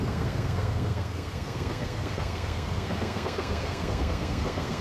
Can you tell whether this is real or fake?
fake